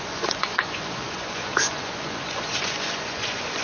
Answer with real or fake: fake